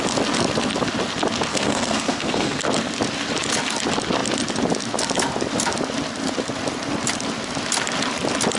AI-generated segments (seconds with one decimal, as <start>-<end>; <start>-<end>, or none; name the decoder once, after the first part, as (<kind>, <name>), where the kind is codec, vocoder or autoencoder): 1.5-2.6 (codec, SNAC)